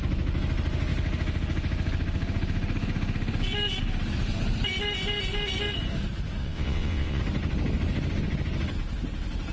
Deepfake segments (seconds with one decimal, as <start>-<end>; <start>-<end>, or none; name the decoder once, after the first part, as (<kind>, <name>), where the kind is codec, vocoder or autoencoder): 6.4-7.2 (vocoder, WaveNeXt)